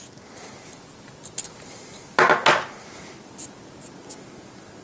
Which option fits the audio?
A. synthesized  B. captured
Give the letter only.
B